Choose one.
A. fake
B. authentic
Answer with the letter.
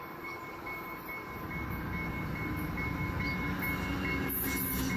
B